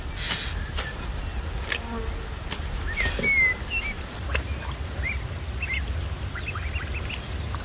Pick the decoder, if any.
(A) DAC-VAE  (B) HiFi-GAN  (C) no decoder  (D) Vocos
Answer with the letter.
C